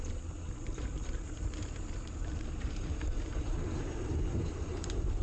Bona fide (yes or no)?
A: no